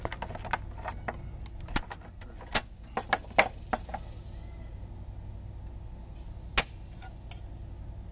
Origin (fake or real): real